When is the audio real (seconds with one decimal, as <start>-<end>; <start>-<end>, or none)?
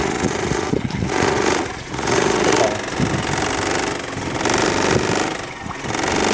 2.6-6.3